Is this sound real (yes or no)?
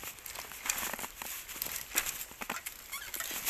yes